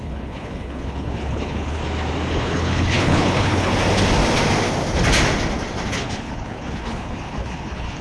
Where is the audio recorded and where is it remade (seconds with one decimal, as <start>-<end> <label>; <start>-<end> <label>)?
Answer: 0.0-1.8 remade; 1.8-2.3 recorded; 2.3-3.7 remade; 3.7-5.9 recorded; 5.9-8.0 remade

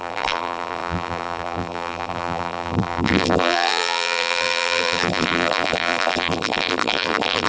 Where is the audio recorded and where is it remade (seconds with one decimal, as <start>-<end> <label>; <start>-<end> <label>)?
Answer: 0.0-7.5 remade

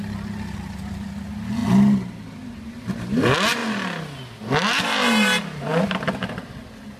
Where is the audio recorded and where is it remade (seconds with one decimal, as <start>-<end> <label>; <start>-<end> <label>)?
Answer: 0.0-7.0 recorded

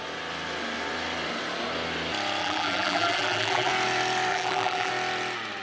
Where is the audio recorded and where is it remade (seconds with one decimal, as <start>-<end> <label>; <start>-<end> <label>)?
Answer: 0.0-2.4 recorded; 2.4-3.7 remade; 3.7-4.3 recorded; 4.3-4.9 remade; 4.9-5.6 recorded

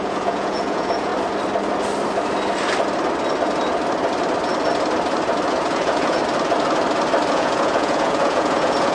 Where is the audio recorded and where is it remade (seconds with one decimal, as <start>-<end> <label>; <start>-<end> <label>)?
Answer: 0.0-1.1 remade; 1.1-5.5 recorded; 5.5-6.2 remade; 6.2-7.3 recorded; 7.3-8.9 remade

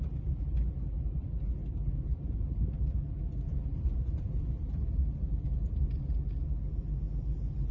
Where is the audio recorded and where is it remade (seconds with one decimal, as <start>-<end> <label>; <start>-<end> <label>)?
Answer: 0.0-3.5 recorded; 3.5-6.2 remade; 6.2-7.7 recorded